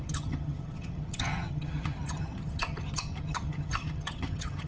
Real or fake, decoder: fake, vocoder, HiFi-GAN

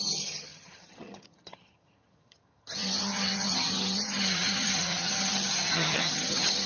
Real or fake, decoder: fake, vocoder, HiFi-GAN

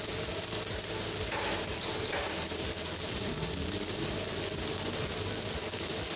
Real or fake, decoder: real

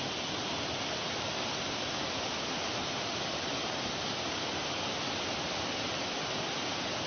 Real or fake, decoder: real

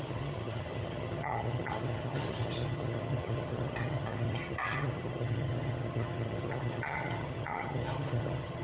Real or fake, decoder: fake, vocoder, HiFi-GAN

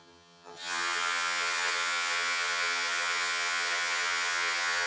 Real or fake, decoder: fake, vocoder, HiFi-GAN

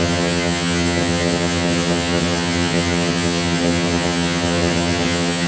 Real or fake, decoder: fake, vocoder, HiFi-GAN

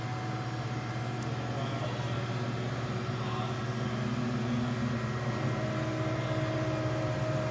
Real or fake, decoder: real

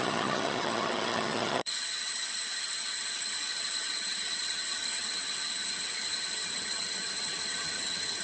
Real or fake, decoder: fake, vocoder, HiFi-GAN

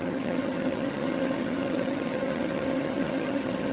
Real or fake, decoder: fake, vocoder, HiFi-GAN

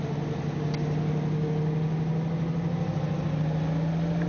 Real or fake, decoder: real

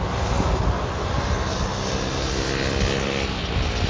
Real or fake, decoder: real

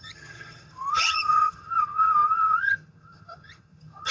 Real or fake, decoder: fake, vocoder, HiFi-GAN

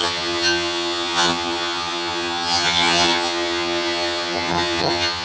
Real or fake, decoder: fake, vocoder, HiFi-GAN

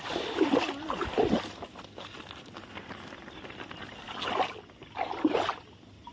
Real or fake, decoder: real